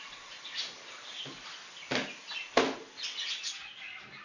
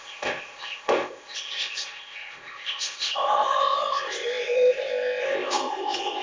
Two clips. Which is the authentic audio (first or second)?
first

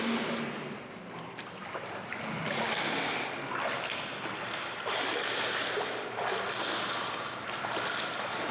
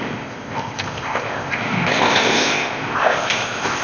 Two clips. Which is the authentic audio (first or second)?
first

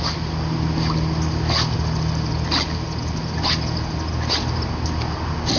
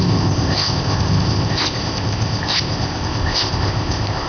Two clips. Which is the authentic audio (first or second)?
first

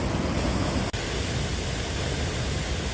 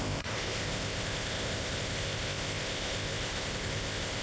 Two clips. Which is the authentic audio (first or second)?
first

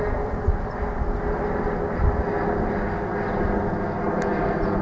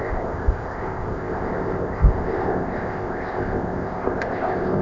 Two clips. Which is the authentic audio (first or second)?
first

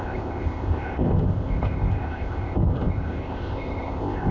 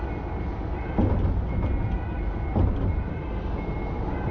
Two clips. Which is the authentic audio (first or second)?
second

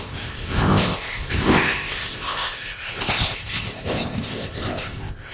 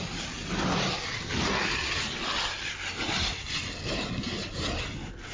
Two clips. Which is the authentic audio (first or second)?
second